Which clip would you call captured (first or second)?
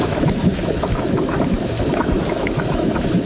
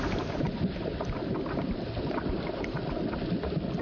second